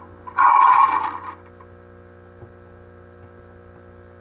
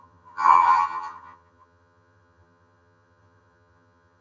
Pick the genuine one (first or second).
first